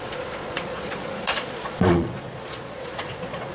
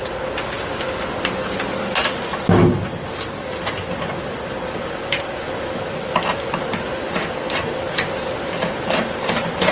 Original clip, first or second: second